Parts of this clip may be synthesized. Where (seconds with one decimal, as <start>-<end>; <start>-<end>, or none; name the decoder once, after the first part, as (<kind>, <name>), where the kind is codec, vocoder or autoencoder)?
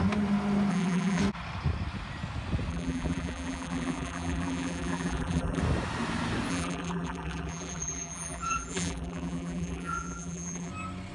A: 0.7-1.2 (vocoder, BigVGAN v2); 2.7-5.6; 6.5-10.7